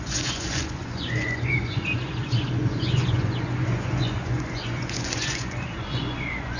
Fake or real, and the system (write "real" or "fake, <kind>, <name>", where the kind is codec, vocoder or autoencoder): fake, vocoder, Vocos